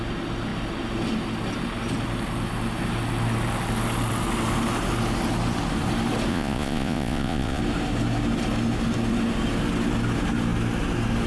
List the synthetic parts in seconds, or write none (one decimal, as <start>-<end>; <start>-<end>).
6.3-7.6